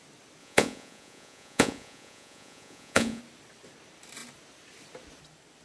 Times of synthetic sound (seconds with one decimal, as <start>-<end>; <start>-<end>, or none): 0.4-3.2